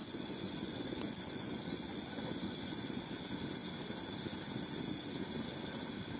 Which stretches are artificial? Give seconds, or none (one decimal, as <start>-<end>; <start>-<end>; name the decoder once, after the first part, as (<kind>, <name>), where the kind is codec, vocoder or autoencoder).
0.0-3.1 (vocoder, Vocos)